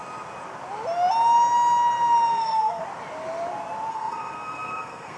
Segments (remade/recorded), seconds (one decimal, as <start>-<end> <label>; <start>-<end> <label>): 0.0-2.3 recorded; 2.3-2.8 remade; 2.8-3.9 recorded; 3.9-5.2 remade